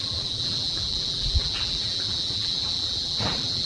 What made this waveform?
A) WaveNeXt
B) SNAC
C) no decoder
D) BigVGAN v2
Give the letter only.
D